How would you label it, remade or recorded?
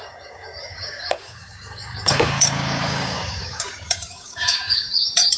remade